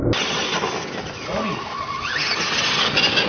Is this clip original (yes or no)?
yes